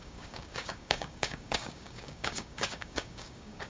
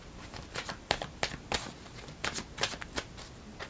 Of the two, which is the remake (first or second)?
first